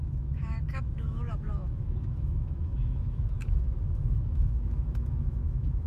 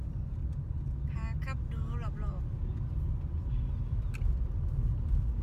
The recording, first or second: second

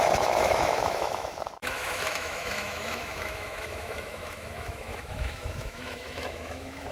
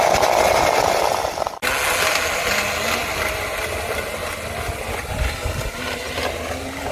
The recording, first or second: second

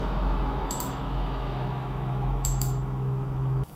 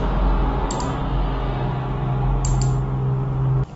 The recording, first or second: second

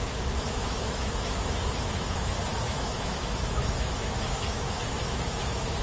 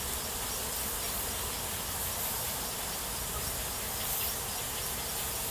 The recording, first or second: second